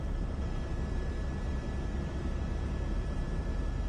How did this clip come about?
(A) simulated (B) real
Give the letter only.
A